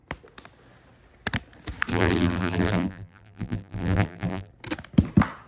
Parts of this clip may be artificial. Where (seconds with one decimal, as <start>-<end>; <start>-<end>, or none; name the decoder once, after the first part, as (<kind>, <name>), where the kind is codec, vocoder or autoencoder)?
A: 1.9-4.5 (vocoder, BigVGAN v2)